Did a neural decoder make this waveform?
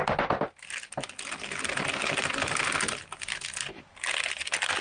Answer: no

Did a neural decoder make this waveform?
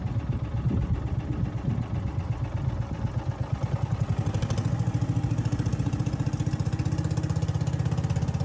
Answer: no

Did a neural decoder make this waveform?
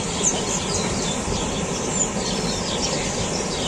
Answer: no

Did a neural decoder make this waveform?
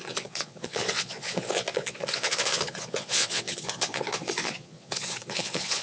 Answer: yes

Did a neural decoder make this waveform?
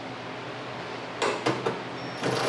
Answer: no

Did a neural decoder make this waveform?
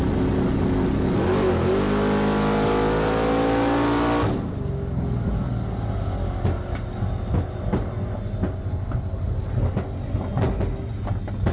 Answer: no